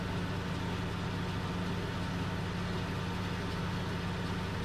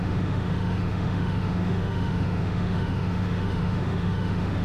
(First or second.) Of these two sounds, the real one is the first